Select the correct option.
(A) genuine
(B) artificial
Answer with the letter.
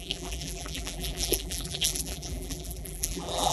B